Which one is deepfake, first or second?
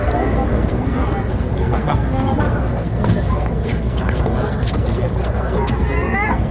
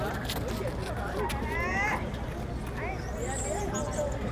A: first